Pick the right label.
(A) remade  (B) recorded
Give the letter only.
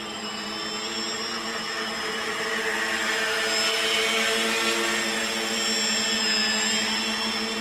B